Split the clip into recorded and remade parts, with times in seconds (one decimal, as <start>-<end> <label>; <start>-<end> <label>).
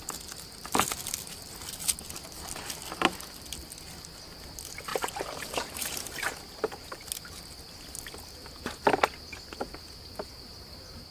0.0-4.9 recorded; 4.9-7.0 remade; 7.0-11.1 recorded